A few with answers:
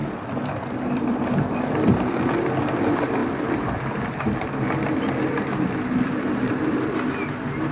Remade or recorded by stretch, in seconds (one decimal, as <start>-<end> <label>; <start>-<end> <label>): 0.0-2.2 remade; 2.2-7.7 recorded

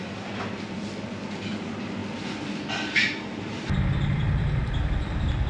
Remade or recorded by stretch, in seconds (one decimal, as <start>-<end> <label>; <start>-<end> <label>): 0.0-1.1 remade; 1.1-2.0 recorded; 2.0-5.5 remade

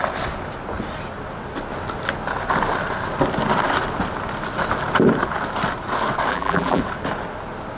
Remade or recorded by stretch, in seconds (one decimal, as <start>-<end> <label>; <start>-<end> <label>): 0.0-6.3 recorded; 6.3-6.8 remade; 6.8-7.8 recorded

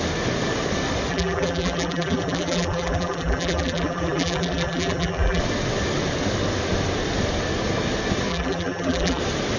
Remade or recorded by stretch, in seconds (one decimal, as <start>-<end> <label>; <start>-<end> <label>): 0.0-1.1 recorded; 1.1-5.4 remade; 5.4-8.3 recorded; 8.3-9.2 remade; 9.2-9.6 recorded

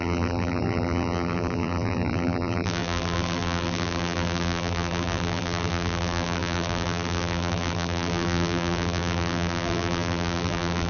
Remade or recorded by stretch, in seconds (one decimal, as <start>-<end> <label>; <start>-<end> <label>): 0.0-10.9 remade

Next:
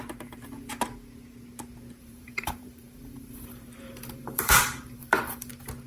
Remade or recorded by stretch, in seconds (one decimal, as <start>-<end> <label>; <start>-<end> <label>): 0.0-2.0 recorded; 2.0-5.5 remade; 5.5-5.9 recorded